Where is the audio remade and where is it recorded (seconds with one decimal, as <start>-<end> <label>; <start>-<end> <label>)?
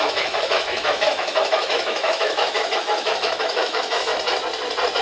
0.0-4.1 remade; 4.1-5.0 recorded